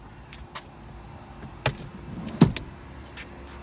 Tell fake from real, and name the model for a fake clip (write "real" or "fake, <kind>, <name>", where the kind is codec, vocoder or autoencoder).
real